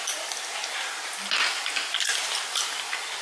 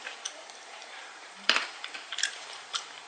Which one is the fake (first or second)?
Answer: second